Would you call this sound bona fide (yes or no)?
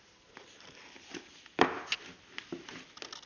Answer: yes